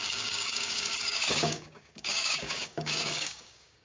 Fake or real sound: fake